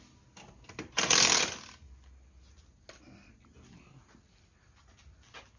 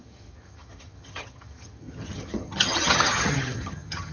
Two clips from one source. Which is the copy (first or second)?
second